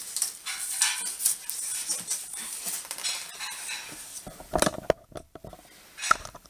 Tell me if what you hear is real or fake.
real